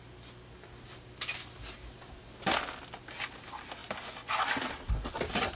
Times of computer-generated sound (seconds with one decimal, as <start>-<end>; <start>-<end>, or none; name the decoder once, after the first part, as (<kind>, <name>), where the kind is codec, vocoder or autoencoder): none